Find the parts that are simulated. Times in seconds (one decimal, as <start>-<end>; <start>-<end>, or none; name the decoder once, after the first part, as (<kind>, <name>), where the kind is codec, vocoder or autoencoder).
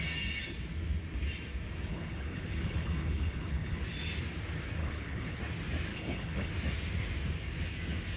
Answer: 1.9-3.8 (codec, HILCodec); 4.8-5.4; 5.9-6.5